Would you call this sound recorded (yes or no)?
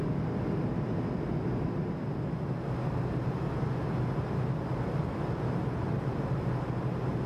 yes